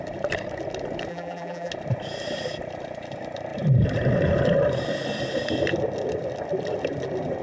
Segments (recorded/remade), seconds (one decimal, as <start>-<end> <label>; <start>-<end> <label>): 0.0-1.1 recorded; 1.1-1.7 remade; 1.7-7.4 recorded